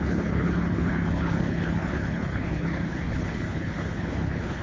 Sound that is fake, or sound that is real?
fake